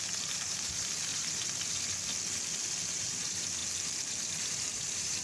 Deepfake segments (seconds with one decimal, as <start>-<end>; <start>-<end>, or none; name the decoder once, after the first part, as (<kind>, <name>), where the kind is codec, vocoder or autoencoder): 0.0-1.1 (vocoder, BigVGAN v2); 2.6-5.2